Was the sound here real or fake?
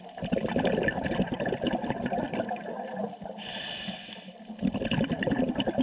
real